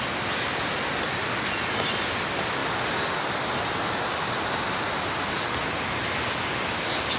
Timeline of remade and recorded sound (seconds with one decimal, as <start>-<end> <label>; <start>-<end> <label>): 0.0-7.2 recorded